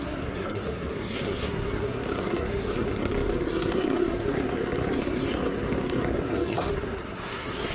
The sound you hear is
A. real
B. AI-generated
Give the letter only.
B